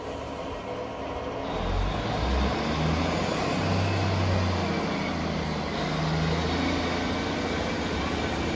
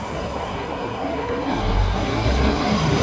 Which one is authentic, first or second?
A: first